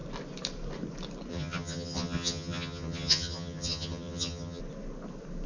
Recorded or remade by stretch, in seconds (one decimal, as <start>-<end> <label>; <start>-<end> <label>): 0.0-1.3 recorded; 1.3-4.6 remade; 4.6-5.5 recorded

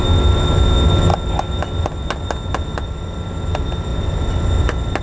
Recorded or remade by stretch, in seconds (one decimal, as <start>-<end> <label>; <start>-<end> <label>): 0.0-5.0 recorded

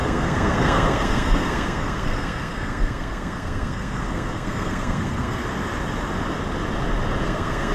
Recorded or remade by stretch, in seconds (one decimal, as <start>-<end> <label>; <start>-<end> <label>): 0.0-5.4 remade; 5.4-7.2 recorded; 7.2-7.7 remade

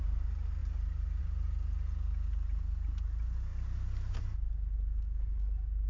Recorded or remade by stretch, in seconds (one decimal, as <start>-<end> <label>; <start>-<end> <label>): 0.0-5.9 recorded

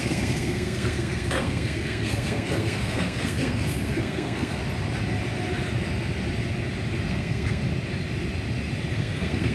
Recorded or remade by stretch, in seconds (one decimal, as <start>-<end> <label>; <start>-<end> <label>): 0.0-4.6 remade; 4.6-7.1 recorded; 7.1-7.6 remade; 7.6-8.9 recorded; 8.9-9.5 remade